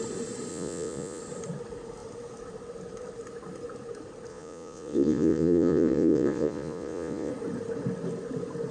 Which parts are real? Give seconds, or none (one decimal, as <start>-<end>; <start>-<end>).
0.0-0.5; 1.2-4.3; 7.3-8.7